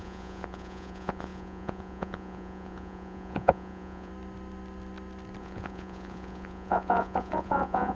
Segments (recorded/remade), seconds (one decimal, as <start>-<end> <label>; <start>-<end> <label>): 0.0-4.1 remade; 4.1-5.4 recorded; 5.4-7.9 remade